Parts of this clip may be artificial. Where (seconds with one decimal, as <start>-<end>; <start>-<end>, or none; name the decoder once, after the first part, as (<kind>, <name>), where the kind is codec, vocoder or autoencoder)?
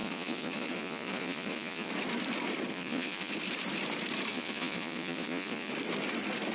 0.0-1.9 (vocoder, Vocos); 2.7-3.3; 4.3-5.7